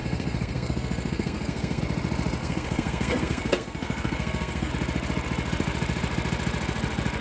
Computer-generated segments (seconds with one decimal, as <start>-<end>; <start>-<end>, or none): 0.0-1.8; 2.4-4.7

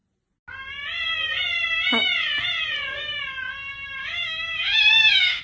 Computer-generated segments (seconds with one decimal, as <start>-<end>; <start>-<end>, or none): 4.0-5.4